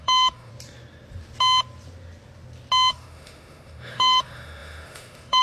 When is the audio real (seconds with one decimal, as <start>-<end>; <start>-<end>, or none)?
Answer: 0.5-2.9